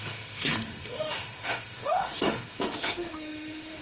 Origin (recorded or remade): remade